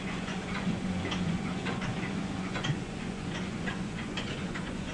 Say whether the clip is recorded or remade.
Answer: remade